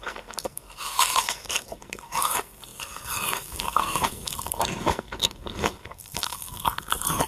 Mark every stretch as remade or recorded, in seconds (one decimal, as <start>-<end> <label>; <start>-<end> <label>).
0.0-7.3 remade